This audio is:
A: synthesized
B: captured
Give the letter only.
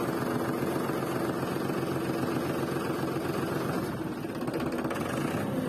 B